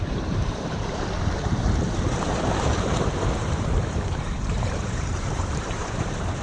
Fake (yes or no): yes